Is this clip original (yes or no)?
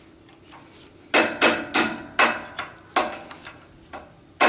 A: yes